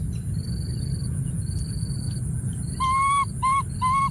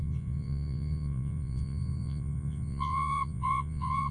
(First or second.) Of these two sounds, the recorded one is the first